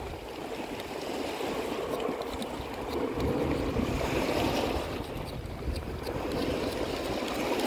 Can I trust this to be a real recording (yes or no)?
yes